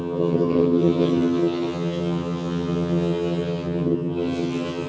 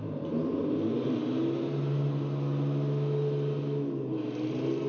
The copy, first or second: first